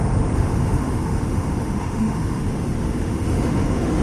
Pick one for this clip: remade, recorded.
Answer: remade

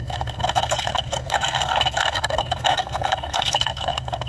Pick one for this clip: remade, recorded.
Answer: remade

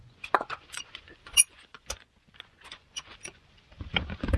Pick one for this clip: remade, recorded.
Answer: remade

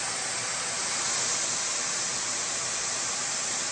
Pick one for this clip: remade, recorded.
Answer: recorded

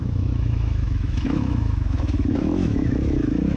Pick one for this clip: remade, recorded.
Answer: remade